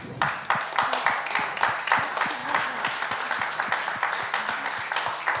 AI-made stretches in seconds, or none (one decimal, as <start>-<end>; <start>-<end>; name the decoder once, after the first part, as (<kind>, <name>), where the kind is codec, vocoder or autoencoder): 2.4-3.0 (codec, DAC)